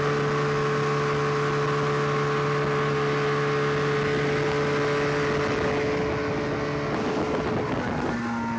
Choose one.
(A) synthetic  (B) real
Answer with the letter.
B